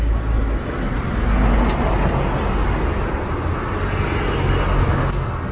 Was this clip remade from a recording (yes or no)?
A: no